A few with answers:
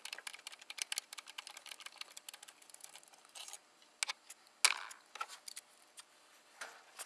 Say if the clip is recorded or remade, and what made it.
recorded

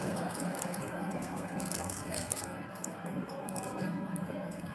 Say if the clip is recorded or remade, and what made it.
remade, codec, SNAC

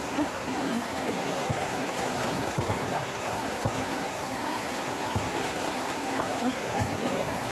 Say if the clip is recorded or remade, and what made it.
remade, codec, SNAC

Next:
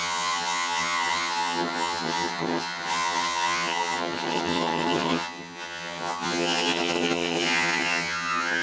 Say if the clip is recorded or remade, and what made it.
remade, vocoder, HiFi-GAN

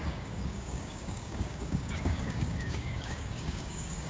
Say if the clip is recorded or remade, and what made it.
remade, codec, DAC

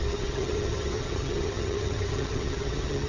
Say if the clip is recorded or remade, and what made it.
remade, vocoder, HiFi-GAN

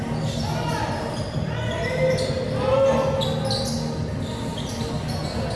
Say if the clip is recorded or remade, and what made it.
recorded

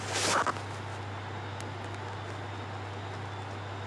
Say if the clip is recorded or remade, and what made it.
recorded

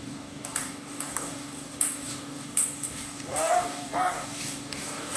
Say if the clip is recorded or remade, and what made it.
remade, codec, DAC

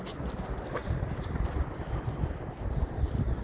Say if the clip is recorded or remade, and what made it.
recorded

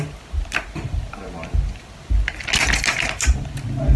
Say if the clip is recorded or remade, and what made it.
recorded